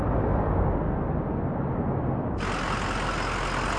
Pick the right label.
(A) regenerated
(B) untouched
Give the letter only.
B